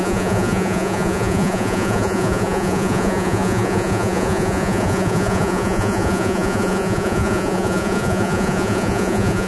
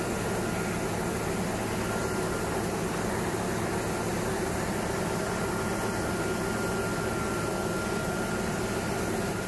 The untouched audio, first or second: second